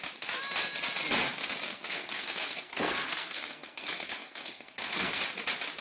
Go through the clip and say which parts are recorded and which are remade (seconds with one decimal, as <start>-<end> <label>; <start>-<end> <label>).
0.0-1.7 recorded; 1.7-5.2 remade; 5.2-5.8 recorded